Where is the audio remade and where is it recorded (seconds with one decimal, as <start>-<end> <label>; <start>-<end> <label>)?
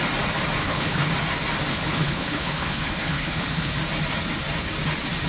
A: 0.0-0.6 recorded; 0.6-1.1 remade; 1.1-1.7 recorded; 1.7-3.8 remade; 3.8-5.3 recorded